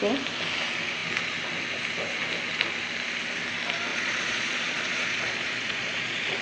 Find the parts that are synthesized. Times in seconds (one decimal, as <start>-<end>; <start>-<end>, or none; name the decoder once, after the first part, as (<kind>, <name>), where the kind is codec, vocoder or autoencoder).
3.9-6.4 (vocoder, Vocos)